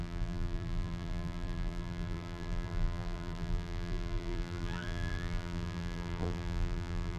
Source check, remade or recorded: remade